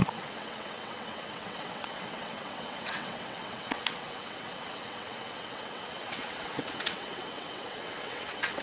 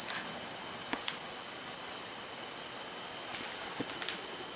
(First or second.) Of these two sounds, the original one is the second